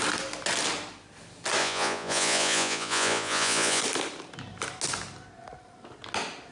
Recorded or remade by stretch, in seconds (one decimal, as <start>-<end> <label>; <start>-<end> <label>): 0.0-1.6 recorded; 1.6-3.8 remade; 3.8-6.5 recorded